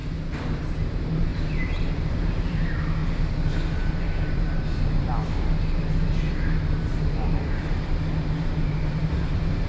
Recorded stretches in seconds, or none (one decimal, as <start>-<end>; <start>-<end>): 0.0-0.9; 3.0-3.9; 5.1-8.2